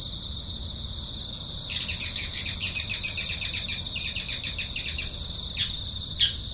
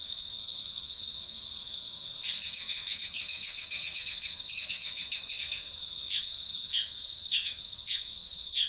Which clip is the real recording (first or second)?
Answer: first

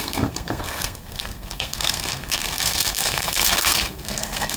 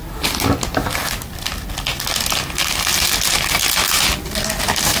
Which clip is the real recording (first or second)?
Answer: second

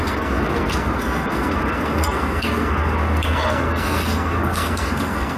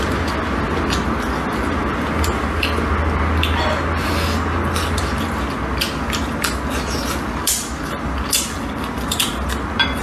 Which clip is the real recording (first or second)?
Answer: second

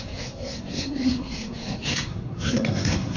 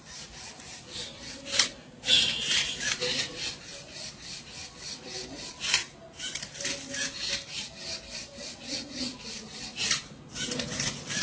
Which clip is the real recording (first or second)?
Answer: second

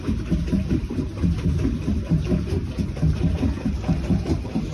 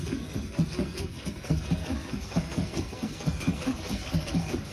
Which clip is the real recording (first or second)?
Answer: first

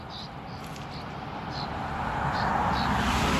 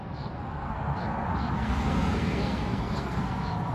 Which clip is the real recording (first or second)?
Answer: first